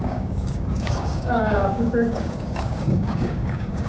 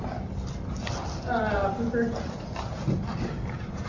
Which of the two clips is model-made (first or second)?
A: first